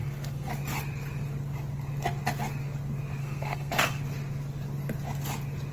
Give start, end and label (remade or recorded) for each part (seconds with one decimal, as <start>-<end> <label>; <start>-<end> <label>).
0.0-0.5 remade; 0.5-3.2 recorded; 3.2-4.0 remade; 4.0-5.7 recorded

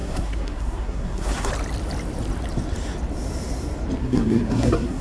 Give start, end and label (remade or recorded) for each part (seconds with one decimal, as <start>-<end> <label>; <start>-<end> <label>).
0.0-1.5 remade; 1.5-4.0 recorded; 4.0-5.0 remade

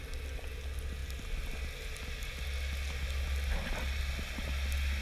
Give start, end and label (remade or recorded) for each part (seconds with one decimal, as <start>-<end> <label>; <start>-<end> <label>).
0.0-5.0 recorded